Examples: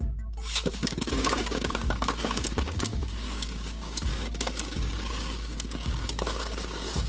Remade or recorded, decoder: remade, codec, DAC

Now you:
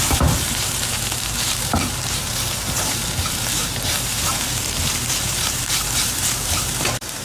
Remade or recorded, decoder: remade, vocoder, BigVGAN v2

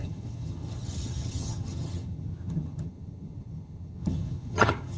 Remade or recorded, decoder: remade, vocoder, HiFi-GAN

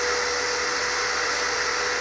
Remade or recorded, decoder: recorded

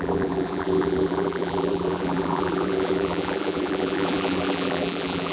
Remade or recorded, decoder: remade, vocoder, BigVGAN v2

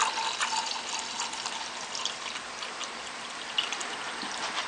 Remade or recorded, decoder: recorded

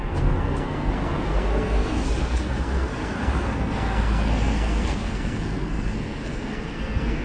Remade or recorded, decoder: remade, codec, SNAC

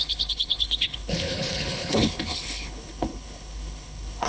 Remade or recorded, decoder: remade, codec, HILCodec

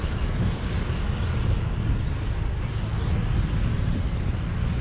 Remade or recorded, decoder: recorded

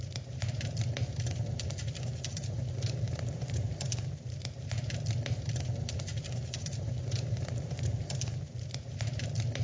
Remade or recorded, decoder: remade, vocoder, BigVGAN v2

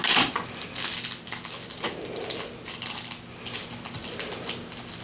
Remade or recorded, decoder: recorded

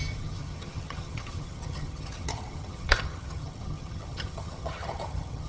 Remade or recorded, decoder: remade, vocoder, HiFi-GAN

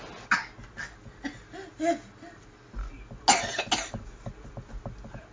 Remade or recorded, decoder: recorded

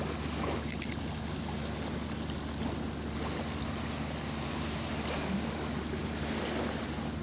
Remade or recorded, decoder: recorded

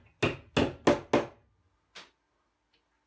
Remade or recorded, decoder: recorded